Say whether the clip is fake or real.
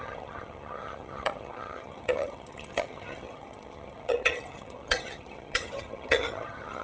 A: fake